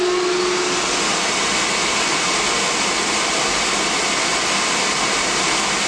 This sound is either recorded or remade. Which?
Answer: recorded